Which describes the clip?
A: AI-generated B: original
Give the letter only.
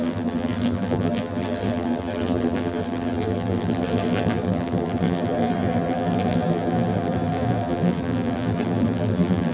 A